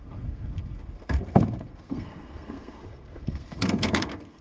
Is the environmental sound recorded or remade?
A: remade